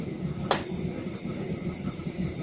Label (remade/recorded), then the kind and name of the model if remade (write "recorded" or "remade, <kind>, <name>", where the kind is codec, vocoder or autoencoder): recorded